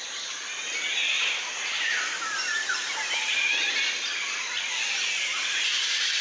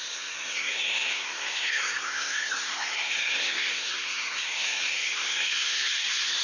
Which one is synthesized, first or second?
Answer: second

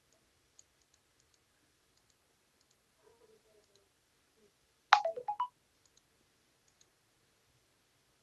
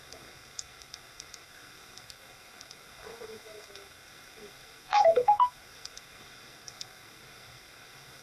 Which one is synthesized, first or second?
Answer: second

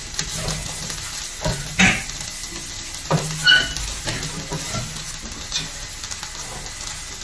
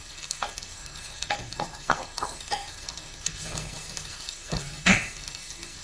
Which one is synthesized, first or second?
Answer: second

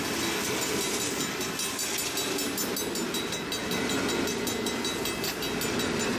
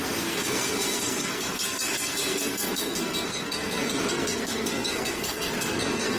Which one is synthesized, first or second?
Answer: second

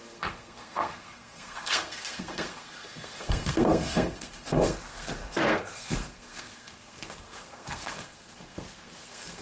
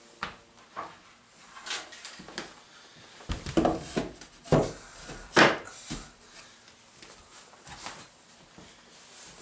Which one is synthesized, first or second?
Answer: first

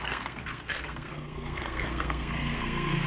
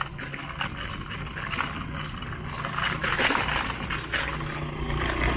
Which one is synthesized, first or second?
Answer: first